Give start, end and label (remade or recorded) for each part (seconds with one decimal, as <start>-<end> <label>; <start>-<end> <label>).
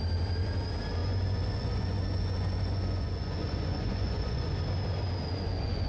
0.0-1.0 recorded; 1.0-4.5 remade; 4.5-5.3 recorded; 5.3-5.9 remade